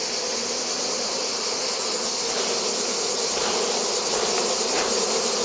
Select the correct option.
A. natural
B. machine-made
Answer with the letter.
A